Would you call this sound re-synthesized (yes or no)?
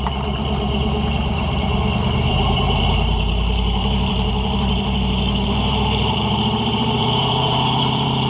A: yes